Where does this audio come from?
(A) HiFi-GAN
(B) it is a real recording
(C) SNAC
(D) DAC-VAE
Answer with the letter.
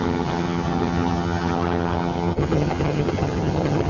A